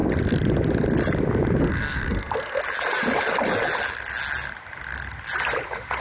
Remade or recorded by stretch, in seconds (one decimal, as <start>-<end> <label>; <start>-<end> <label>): 0.0-1.6 recorded; 1.6-2.6 remade; 2.6-6.0 recorded

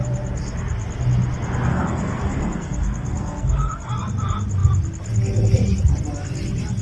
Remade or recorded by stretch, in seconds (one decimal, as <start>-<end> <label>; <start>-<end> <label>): 0.0-1.7 recorded; 1.7-3.9 remade; 3.9-6.8 recorded

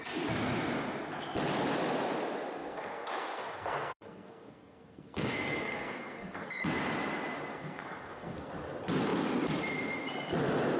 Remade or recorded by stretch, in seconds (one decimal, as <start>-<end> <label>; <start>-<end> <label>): 0.0-2.6 recorded; 2.6-6.6 remade; 6.6-7.5 recorded; 7.5-8.5 remade; 8.5-10.8 recorded